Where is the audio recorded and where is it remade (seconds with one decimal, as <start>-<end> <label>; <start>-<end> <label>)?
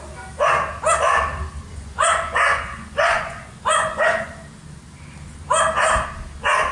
0.0-1.7 recorded; 1.7-4.3 remade; 4.3-6.7 recorded